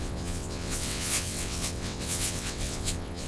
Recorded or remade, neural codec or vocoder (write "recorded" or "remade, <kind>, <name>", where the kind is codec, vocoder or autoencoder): remade, vocoder, WaveNeXt